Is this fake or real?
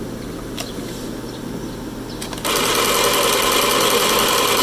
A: real